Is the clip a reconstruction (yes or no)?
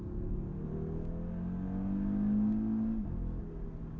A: no